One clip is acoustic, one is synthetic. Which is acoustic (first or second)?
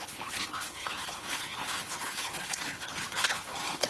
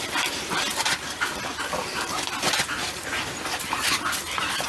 second